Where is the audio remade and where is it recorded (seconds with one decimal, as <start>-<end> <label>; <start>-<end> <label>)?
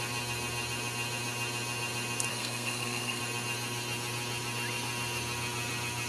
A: 0.0-2.3 recorded; 2.3-3.2 remade; 3.2-6.1 recorded